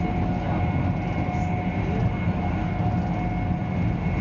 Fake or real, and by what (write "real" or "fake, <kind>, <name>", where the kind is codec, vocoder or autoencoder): real